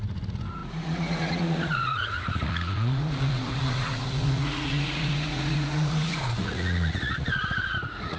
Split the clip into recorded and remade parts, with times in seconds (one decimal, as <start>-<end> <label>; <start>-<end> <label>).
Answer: 0.0-8.2 remade